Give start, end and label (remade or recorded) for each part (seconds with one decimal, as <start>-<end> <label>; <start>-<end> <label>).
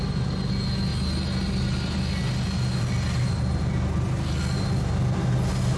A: 0.0-5.8 recorded